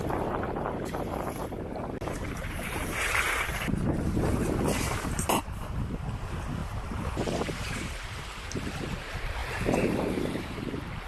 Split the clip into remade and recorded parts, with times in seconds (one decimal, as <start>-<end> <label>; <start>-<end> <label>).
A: 0.0-11.1 remade